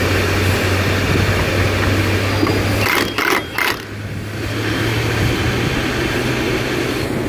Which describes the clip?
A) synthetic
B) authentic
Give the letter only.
B